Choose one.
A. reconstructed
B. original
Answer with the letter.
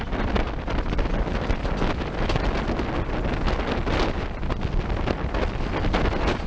B